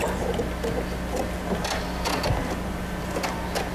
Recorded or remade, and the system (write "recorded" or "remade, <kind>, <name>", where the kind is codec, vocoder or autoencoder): recorded